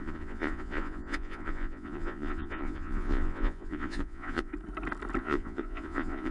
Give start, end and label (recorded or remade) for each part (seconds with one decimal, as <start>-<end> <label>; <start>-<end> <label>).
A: 0.0-4.5 remade; 4.5-5.2 recorded; 5.2-6.3 remade